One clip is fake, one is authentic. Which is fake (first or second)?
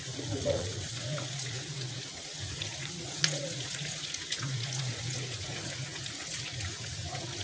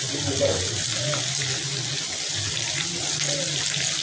first